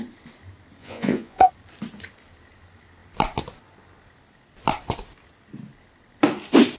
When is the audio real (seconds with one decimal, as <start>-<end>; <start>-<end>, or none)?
0.0-0.8; 1.5-6.8